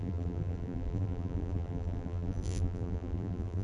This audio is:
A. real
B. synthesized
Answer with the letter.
B